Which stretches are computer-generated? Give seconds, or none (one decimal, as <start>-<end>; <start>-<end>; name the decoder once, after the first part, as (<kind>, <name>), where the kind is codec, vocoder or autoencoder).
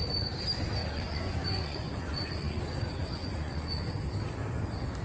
0.8-2.6 (vocoder, Vocos); 3.2-3.8